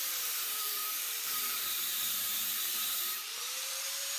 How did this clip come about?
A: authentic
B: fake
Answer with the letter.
B